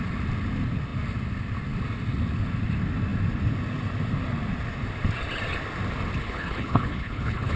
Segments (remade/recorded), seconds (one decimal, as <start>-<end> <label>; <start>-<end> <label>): 0.0-6.2 recorded; 6.2-7.6 remade